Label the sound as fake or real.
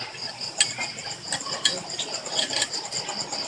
real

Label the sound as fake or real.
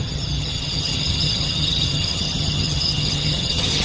fake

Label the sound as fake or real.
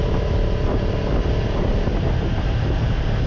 fake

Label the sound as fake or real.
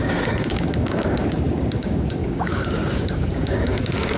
fake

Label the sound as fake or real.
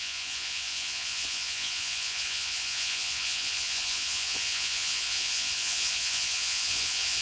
fake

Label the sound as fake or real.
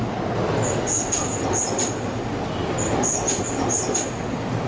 real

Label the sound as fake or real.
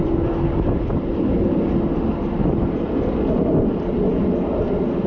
real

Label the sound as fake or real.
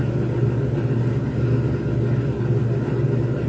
real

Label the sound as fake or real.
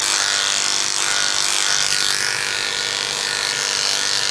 real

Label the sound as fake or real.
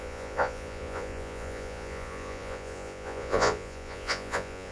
fake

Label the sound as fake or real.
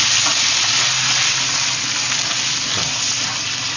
real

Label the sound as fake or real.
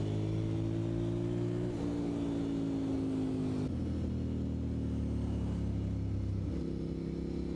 real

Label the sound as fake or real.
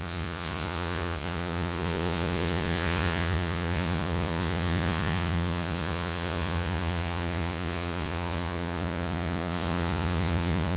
fake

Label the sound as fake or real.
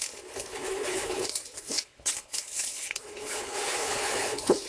fake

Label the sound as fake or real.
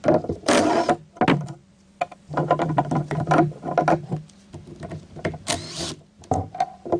real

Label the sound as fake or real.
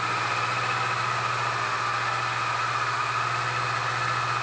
real